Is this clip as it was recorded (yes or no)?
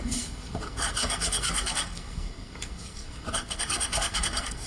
no